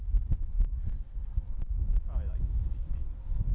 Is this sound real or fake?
real